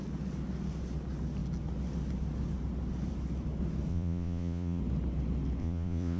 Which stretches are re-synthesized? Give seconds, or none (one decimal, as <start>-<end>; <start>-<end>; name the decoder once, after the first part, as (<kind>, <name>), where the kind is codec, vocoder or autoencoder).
3.9-4.8 (vocoder, Vocos); 5.6-6.2